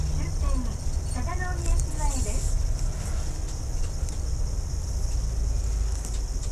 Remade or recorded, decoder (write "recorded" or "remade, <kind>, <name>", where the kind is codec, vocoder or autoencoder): recorded